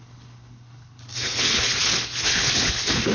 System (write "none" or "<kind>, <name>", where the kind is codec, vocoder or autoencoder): codec, HILCodec